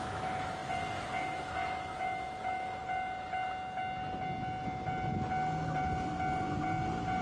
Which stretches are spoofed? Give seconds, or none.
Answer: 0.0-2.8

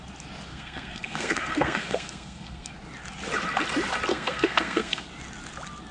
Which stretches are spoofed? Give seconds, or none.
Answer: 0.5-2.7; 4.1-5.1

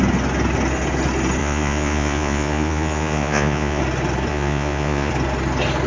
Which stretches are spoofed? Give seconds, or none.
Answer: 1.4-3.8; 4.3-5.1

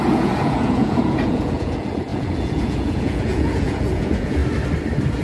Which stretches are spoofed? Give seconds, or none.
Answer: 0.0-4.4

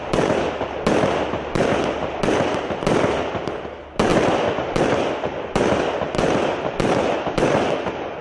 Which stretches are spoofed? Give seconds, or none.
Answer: none

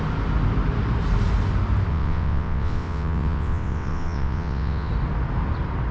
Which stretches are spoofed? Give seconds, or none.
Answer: 1.9-4.9

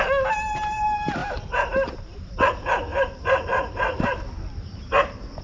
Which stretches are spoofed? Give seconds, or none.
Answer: 1.2-2.3; 2.9-4.8